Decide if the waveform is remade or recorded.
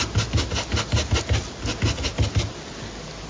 recorded